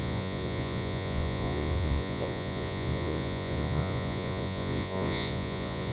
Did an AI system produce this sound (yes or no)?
yes